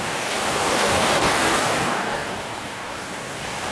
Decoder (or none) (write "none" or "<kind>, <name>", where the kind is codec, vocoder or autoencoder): codec, DAC